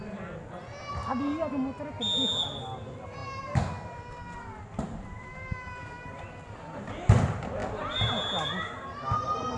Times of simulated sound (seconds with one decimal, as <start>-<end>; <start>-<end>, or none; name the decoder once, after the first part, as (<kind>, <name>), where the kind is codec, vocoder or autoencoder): none

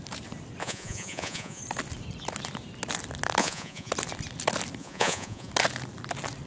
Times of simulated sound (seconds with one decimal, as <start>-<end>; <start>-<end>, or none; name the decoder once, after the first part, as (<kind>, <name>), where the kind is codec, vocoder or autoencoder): 0.6-1.6 (vocoder, Vocos); 3.4-3.9; 4.8-5.5

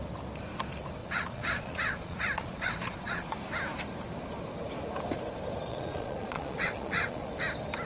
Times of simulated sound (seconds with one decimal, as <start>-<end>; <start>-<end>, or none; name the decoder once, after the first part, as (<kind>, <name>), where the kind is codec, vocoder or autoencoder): 1.0-3.3 (vocoder, Vocos); 5.7-7.3

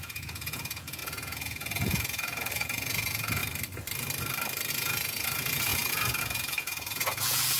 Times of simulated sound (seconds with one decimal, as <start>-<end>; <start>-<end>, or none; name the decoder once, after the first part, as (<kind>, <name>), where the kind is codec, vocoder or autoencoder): 0.0-3.4 (vocoder, Vocos); 4.7-7.6

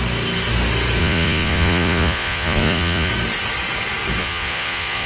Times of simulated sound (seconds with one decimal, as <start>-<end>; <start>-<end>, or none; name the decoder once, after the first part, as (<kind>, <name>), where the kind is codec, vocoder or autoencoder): 1.0-3.1 (vocoder, Vocos); 4.2-5.1